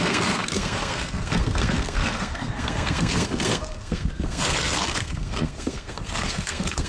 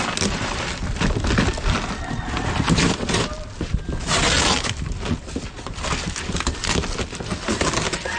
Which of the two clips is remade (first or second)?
first